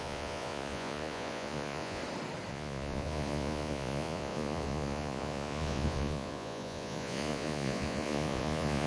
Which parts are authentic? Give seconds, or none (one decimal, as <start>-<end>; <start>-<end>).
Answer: 2.0-2.5